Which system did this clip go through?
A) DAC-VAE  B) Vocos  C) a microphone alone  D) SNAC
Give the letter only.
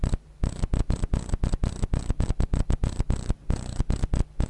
C